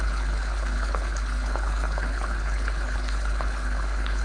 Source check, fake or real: fake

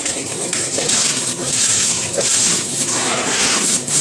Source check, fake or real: fake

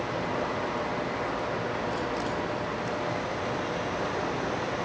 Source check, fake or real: real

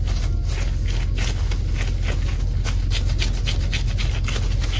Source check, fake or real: real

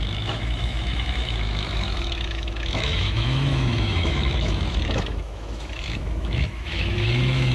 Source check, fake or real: fake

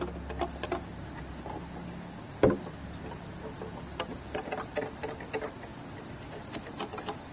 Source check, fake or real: real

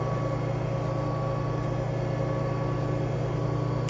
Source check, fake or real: real